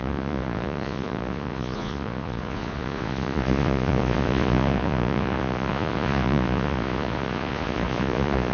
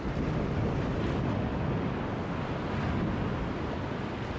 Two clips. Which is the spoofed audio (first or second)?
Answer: first